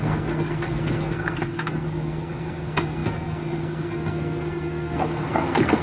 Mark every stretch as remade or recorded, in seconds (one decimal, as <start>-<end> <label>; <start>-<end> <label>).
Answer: 0.0-5.8 remade